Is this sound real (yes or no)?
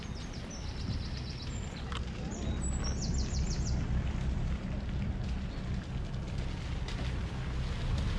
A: yes